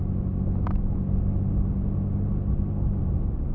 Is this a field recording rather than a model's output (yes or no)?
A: yes